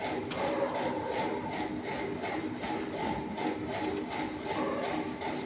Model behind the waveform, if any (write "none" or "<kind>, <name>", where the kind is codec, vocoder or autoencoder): none